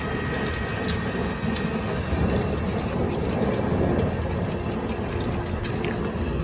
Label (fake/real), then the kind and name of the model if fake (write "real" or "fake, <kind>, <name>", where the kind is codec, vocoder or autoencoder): real